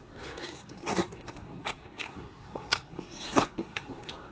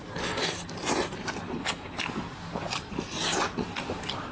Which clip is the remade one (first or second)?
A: first